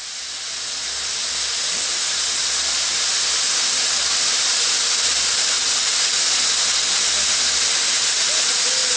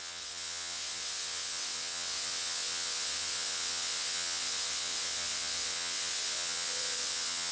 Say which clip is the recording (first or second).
first